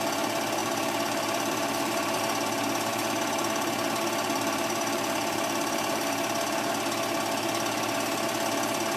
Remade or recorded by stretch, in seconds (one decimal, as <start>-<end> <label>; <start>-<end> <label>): 0.0-0.6 recorded; 0.6-2.2 remade; 2.2-2.9 recorded; 2.9-6.7 remade; 6.7-9.0 recorded